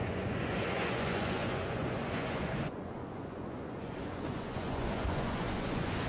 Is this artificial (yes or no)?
yes